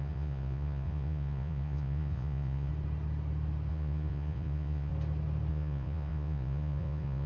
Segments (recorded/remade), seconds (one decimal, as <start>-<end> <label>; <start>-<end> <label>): 0.0-2.7 remade; 2.7-3.7 recorded; 3.7-4.9 remade; 4.9-5.5 recorded; 5.5-7.3 remade